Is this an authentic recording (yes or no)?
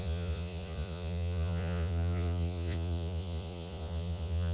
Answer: no